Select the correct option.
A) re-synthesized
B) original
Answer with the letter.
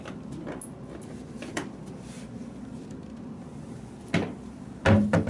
B